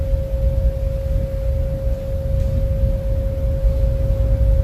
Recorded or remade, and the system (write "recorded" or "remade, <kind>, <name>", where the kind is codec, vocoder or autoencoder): recorded